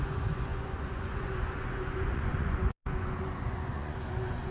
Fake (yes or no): yes